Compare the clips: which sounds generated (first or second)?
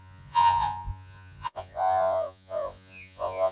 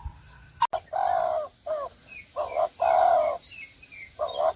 first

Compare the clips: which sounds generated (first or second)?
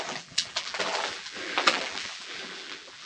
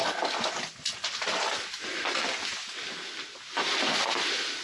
first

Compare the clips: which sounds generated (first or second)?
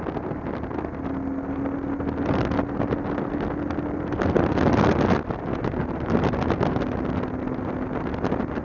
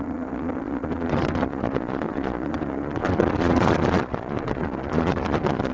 second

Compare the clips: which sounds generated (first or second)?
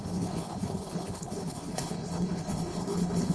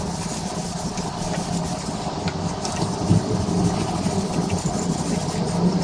first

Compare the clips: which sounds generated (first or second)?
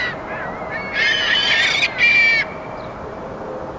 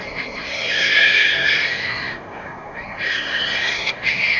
second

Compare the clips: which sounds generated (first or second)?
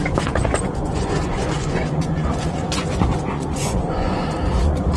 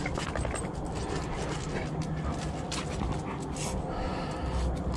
first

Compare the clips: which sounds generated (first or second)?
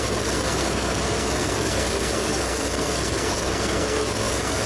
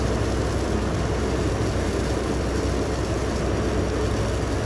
first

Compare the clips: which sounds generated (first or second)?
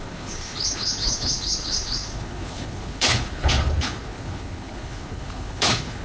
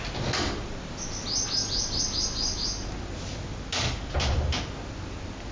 first